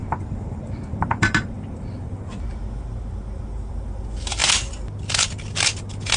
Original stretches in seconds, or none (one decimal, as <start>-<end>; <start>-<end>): 0.0-6.2